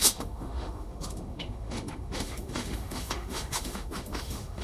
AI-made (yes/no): yes